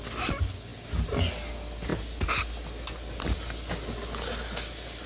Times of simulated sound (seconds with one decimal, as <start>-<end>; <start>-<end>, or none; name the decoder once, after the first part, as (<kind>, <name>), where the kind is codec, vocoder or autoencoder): none